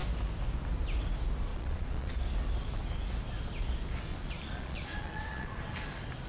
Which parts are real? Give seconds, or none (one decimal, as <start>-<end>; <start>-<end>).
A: 0.0-1.5; 2.2-4.1; 5.6-6.3